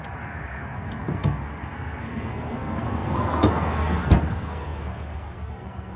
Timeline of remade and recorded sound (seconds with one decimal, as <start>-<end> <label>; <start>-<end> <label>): 0.0-6.0 remade